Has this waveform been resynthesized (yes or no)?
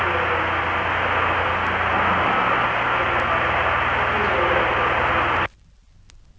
no